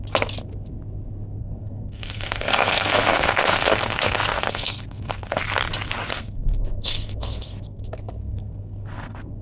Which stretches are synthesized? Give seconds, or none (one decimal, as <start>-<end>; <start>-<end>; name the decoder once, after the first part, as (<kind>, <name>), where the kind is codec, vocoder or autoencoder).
1.4-5.4 (codec, SNAC); 6.1-9.4